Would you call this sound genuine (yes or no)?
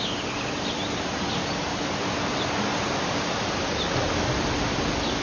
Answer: yes